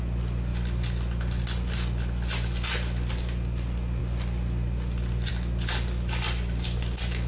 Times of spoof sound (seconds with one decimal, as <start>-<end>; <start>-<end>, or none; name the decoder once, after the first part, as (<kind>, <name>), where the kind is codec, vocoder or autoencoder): none